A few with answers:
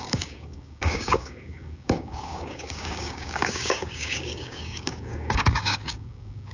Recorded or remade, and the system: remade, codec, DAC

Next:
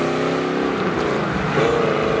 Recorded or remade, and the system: recorded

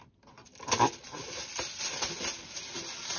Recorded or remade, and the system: recorded